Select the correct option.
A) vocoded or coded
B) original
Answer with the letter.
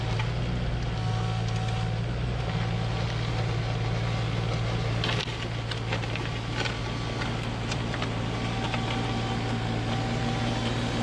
B